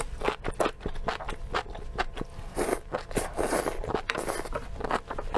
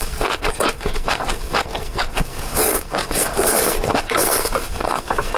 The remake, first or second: second